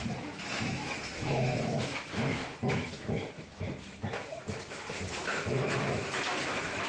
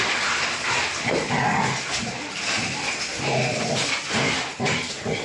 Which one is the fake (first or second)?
first